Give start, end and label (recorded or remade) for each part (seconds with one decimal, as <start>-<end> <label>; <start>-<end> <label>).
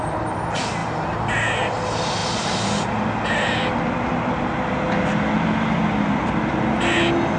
0.0-7.4 recorded